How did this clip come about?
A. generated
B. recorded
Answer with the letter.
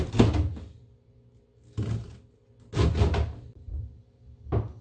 B